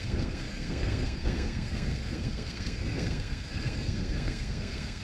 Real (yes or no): no